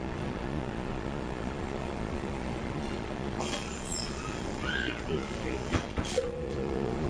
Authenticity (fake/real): fake